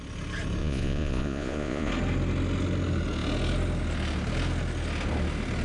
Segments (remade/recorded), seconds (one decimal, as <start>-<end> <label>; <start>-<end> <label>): 0.0-0.6 recorded; 0.6-1.9 remade; 1.9-5.6 recorded